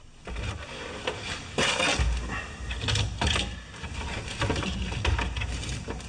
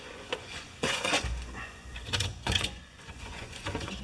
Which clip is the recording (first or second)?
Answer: first